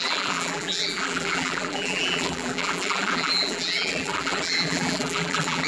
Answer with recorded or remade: remade